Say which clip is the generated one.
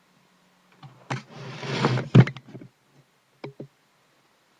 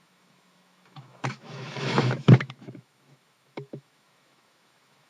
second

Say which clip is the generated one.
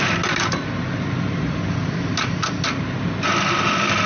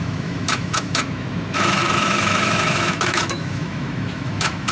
second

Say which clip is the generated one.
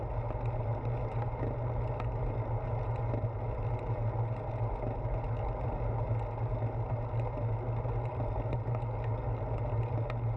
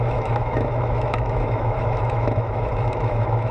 second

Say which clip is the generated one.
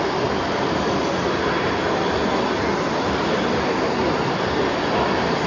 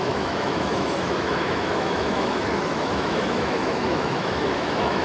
second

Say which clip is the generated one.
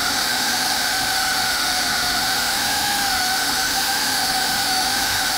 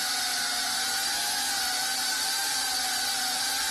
first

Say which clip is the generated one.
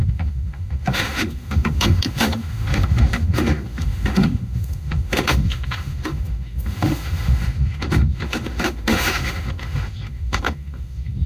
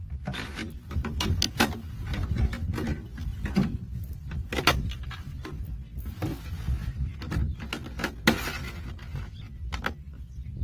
first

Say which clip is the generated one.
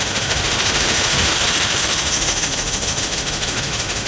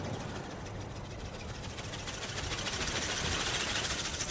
first